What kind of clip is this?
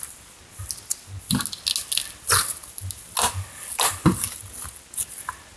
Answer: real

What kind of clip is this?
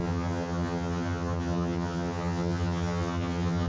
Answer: fake